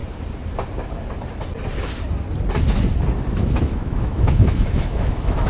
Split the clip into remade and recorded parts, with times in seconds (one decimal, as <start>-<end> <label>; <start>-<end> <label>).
0.0-3.3 recorded; 3.3-5.5 remade